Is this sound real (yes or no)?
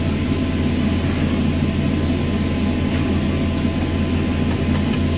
yes